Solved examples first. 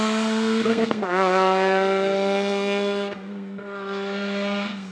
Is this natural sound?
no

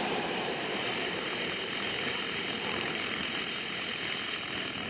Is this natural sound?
no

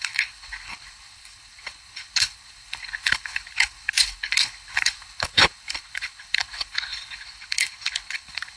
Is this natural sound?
no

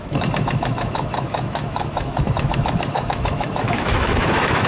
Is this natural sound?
no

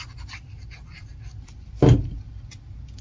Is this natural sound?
yes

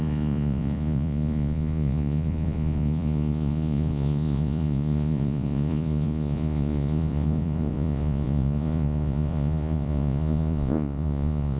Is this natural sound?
no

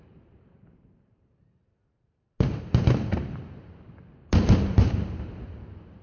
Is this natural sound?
no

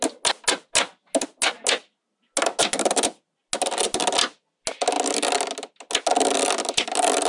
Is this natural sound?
yes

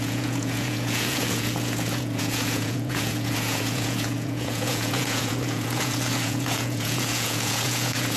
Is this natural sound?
no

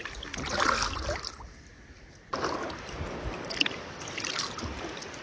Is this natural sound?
yes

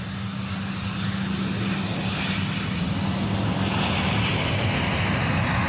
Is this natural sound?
yes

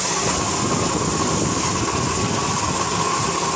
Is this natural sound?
yes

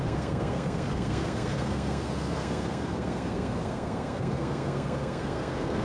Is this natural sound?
no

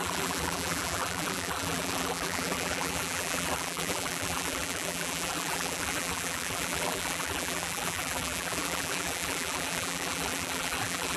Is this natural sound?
no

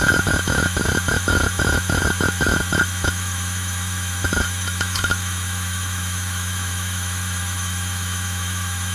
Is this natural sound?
no